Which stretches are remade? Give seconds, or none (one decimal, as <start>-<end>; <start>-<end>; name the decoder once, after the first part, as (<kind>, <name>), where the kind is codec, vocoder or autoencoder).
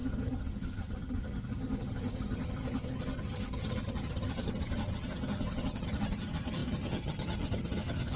0.0-8.2 (vocoder, HiFi-GAN)